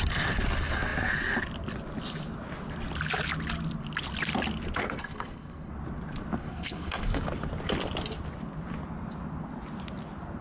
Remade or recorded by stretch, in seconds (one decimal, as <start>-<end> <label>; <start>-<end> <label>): 0.0-4.8 recorded; 4.8-5.7 remade; 5.7-6.4 recorded; 6.4-7.2 remade; 7.2-10.4 recorded